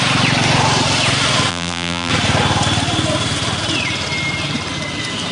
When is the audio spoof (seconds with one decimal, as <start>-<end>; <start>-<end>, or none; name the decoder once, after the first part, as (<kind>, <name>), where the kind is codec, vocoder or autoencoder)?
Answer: 1.5-2.1 (vocoder, BigVGAN v2)